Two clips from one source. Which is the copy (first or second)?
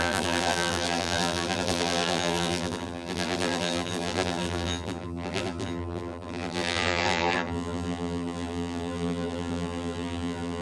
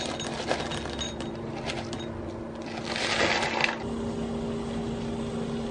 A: first